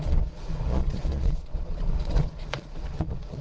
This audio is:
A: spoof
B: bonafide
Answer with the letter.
A